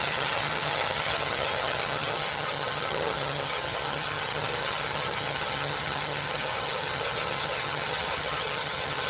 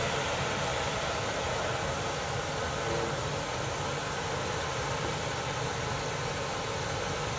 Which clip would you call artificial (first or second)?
first